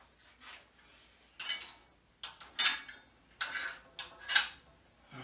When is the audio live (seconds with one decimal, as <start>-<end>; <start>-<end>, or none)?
0.0-5.2